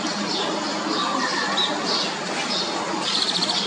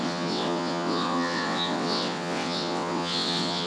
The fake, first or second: second